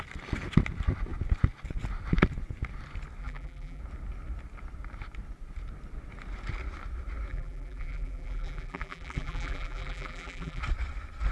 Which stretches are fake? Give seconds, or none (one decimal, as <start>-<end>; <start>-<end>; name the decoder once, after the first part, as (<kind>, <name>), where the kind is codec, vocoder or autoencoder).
3.2-3.8 (vocoder, BigVGAN v2); 7.3-10.6